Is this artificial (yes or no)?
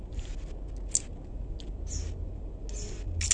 no